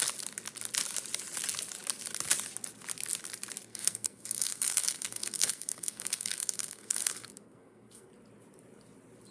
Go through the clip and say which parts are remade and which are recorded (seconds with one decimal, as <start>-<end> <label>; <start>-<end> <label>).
0.0-3.7 recorded; 3.7-8.1 remade; 8.1-9.3 recorded